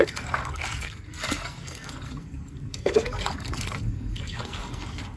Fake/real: fake